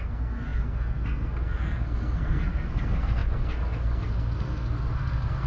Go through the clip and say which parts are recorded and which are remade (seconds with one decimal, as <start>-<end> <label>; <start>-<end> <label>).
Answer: 0.0-5.5 remade

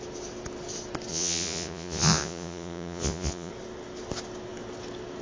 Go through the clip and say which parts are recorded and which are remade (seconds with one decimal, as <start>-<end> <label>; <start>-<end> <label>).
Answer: 0.0-1.1 recorded; 1.1-3.5 remade; 3.5-5.2 recorded